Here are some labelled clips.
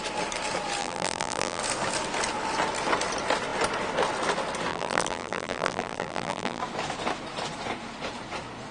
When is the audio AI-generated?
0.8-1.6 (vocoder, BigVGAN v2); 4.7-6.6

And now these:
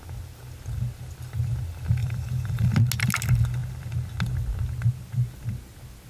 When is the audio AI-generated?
2.0-2.7 (vocoder, BigVGAN v2)

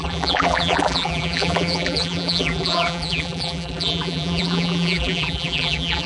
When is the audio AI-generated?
0.0-6.1 (vocoder, BigVGAN v2)

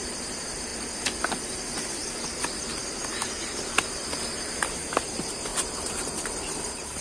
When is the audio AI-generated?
0.0-0.7 (vocoder, BigVGAN v2); 4.9-7.0

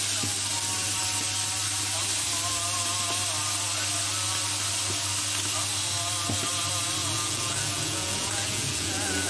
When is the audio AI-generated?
7.0-9.3 (vocoder, Vocos)